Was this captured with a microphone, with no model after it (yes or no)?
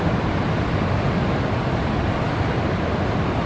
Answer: yes